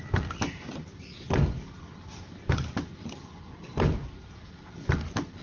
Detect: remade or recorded recorded